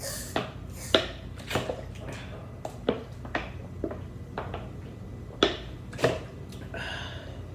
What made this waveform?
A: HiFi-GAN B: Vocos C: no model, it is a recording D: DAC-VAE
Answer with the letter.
C